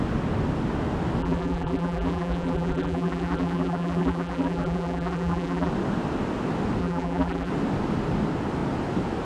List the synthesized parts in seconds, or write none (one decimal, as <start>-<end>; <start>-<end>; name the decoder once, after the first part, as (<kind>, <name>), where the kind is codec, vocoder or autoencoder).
1.2-5.7 (vocoder, BigVGAN v2); 6.8-7.5